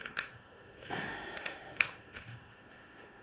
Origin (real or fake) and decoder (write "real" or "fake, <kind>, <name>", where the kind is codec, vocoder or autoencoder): fake, autoencoder, DAC-VAE